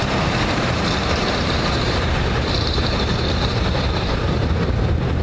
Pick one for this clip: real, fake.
fake